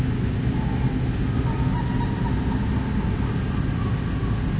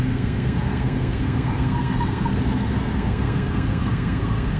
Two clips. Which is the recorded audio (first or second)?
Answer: first